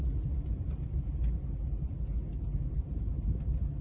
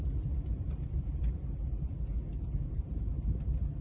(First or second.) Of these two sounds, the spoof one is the second